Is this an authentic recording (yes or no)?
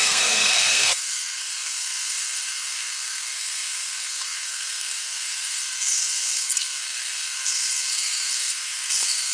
no